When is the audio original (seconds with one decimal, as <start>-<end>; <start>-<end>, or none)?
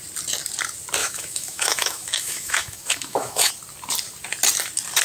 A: 0.0-1.0; 3.5-5.0